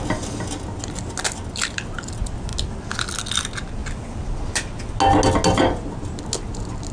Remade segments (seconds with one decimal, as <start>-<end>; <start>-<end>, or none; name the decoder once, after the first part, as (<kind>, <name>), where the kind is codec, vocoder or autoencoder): none